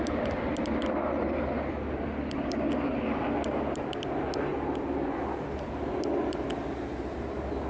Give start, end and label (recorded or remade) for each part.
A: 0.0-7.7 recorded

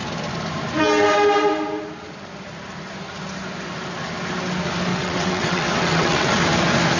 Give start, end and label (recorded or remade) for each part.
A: 0.0-4.9 recorded; 4.9-6.4 remade; 6.4-7.0 recorded

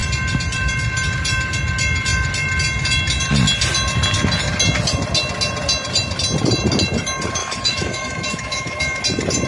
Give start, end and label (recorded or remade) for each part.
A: 0.0-7.4 recorded; 7.4-9.0 remade; 9.0-9.5 recorded